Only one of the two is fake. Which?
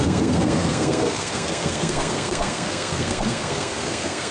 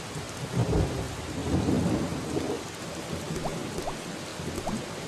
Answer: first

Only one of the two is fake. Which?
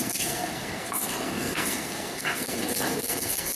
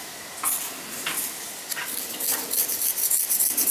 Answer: first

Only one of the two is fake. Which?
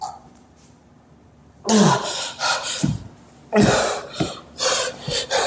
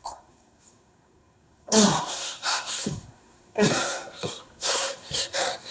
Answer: second